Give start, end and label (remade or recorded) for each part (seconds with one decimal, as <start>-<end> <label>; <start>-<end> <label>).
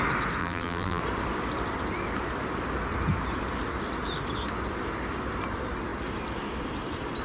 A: 0.0-0.4 recorded; 0.4-1.0 remade; 1.0-7.2 recorded